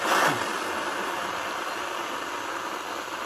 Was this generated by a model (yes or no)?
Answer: no